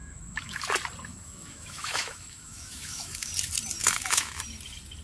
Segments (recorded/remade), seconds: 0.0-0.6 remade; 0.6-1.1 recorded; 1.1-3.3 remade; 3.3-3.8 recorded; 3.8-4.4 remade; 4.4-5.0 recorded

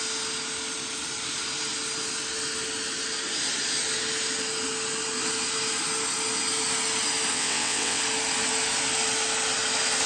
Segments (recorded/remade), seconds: 0.0-7.3 recorded; 7.3-8.0 remade; 8.0-10.1 recorded

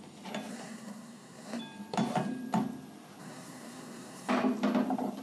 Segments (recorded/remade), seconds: 0.0-0.5 recorded; 0.5-1.6 remade; 1.6-3.2 recorded; 3.2-4.3 remade; 4.3-5.2 recorded

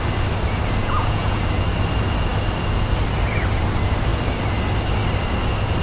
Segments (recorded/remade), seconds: 0.0-0.8 recorded; 0.8-1.4 remade; 1.4-5.8 recorded

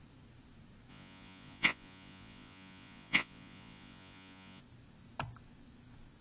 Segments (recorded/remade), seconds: 0.0-0.9 recorded; 0.9-4.6 remade; 4.6-6.2 recorded

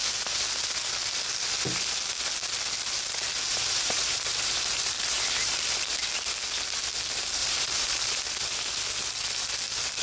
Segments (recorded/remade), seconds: 0.0-3.5 recorded; 3.5-6.0 remade; 6.0-7.4 recorded; 7.4-8.2 remade; 8.2-10.0 recorded

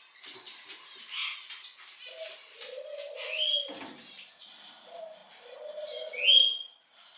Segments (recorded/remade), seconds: 0.0-7.2 recorded

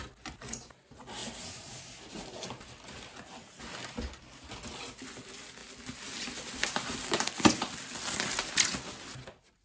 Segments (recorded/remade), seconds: 0.0-9.6 recorded